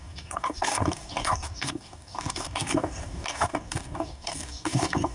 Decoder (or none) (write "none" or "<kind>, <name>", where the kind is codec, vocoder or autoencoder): codec, DAC